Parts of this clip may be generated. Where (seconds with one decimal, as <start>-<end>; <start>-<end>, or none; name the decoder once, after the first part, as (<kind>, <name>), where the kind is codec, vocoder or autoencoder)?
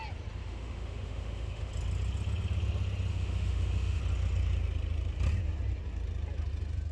0.4-1.7 (autoencoder, DAC-VAE); 3.1-4.0